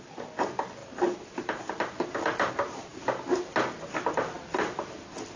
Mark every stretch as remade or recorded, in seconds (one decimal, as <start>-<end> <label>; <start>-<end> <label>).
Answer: 0.0-5.4 recorded